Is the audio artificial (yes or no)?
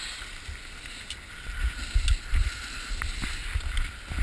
no